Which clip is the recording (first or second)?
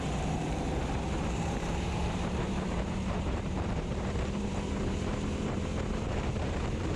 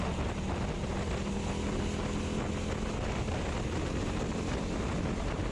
second